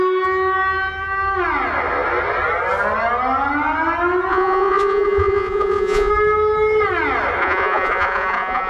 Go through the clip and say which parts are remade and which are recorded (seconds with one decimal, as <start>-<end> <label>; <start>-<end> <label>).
0.0-4.3 recorded; 4.3-6.1 remade; 6.1-7.4 recorded; 7.4-8.7 remade